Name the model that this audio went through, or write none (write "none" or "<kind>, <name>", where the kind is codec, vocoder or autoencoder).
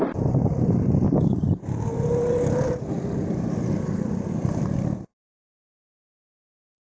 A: vocoder, BigVGAN v2